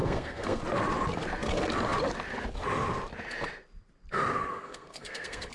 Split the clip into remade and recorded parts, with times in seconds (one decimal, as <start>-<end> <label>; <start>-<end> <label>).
0.0-0.6 remade; 0.6-4.5 recorded; 4.5-5.5 remade